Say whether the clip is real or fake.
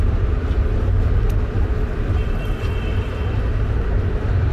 real